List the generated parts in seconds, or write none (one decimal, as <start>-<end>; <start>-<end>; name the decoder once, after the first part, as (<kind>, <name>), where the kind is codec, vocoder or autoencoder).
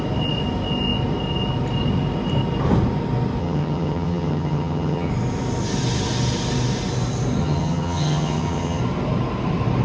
3.4-5.1 (vocoder, HiFi-GAN); 7.4-8.8